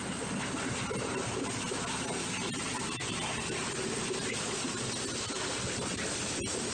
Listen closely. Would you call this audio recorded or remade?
recorded